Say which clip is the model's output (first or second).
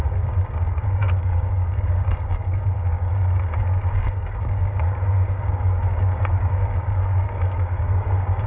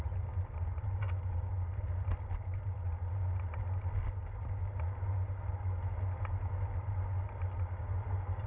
first